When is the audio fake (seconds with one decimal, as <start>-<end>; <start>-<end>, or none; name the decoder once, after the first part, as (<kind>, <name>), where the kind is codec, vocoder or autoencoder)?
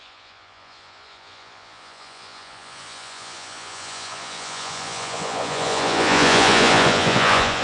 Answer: 0.0-7.6 (vocoder, Vocos)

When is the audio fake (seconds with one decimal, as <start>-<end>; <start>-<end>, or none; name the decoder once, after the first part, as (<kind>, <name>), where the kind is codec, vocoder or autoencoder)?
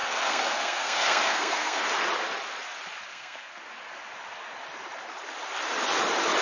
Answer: 0.0-1.8 (codec, SNAC); 3.1-3.6